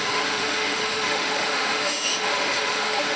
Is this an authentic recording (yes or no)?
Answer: no